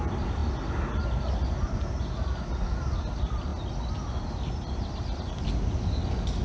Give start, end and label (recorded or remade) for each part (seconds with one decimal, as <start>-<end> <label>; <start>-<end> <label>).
0.0-6.4 recorded